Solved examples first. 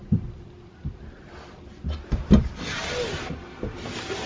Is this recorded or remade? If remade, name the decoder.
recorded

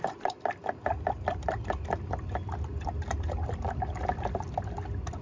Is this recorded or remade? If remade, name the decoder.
recorded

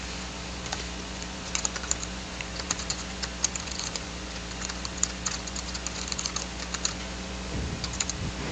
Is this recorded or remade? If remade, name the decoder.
remade, vocoder, Vocos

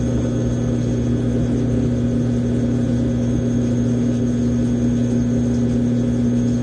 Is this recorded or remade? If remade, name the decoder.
recorded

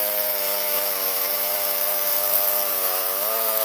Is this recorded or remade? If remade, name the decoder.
remade, autoencoder, DAC-VAE